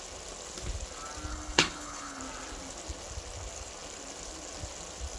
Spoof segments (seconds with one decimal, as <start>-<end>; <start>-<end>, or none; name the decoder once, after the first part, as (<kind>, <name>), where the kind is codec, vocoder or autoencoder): 1.3-2.2 (codec, HILCodec)